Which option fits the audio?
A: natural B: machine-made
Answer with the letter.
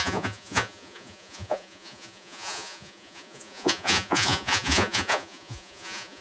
B